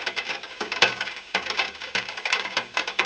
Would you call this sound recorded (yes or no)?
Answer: no